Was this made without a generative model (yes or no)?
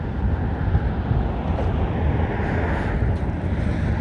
yes